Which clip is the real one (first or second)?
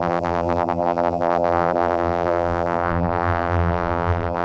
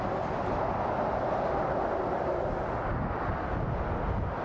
second